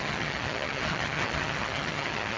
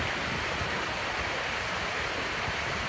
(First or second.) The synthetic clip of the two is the first